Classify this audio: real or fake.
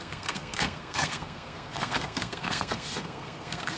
fake